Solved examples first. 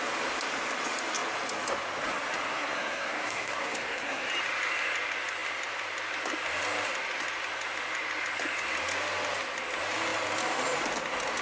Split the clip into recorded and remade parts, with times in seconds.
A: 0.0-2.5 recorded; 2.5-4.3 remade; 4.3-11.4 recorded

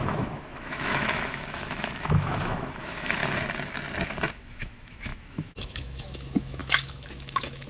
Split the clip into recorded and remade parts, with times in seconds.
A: 0.0-3.2 remade; 3.2-4.3 recorded; 4.3-7.7 remade

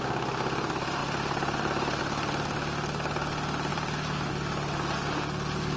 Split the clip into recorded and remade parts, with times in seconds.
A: 0.0-1.0 recorded; 1.0-2.0 remade; 2.0-3.7 recorded; 3.7-4.3 remade; 4.3-5.8 recorded

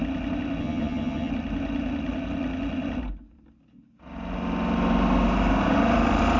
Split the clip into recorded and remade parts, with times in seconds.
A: 0.0-0.6 recorded; 0.6-1.3 remade; 1.3-6.4 recorded